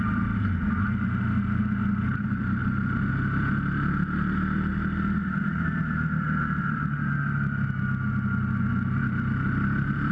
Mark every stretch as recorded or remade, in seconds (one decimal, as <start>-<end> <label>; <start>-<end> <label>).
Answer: 0.0-4.7 recorded; 4.7-7.1 remade; 7.1-10.1 recorded